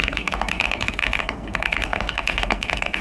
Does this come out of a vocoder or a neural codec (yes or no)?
yes